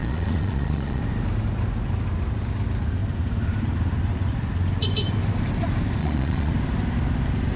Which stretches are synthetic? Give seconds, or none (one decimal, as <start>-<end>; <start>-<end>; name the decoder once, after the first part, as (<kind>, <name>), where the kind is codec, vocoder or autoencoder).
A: 0.0-1.0 (vocoder, Vocos); 6.0-6.5